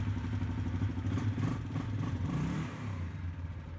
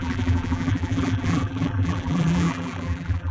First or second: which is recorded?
first